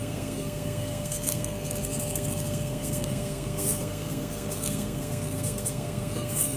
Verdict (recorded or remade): remade